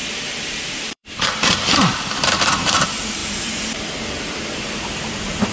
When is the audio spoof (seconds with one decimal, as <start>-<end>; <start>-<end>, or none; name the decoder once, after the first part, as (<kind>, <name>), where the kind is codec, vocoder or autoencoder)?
0.0-5.5 (vocoder, BigVGAN v2)